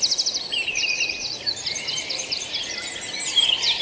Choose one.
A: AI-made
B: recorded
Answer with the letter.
A